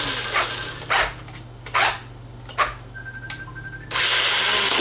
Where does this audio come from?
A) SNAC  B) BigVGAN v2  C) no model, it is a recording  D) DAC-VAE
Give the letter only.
C